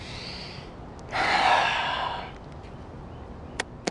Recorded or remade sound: recorded